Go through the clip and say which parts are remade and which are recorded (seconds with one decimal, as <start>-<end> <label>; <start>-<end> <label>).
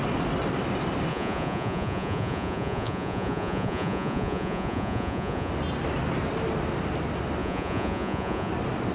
0.0-1.1 recorded; 1.1-5.5 remade; 5.5-7.4 recorded; 7.4-8.5 remade; 8.5-8.9 recorded